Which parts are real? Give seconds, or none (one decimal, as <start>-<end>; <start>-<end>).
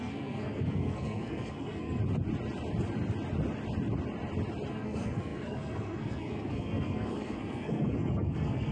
2.0-4.7